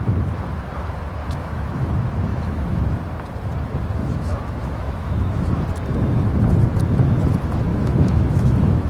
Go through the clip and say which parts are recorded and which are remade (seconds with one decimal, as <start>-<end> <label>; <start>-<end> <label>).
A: 0.0-1.2 recorded; 1.2-1.9 remade; 1.9-2.3 recorded; 2.3-2.8 remade; 2.8-4.0 recorded; 4.0-5.6 remade; 5.6-7.7 recorded; 7.7-8.9 remade